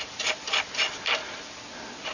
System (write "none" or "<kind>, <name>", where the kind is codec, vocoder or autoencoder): none